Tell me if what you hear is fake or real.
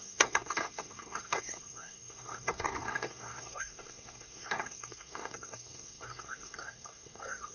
fake